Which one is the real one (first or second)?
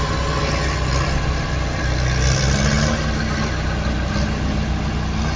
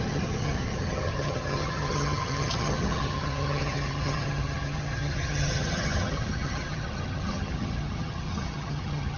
first